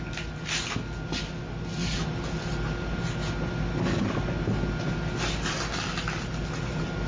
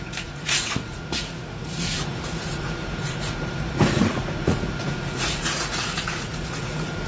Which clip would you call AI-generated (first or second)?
second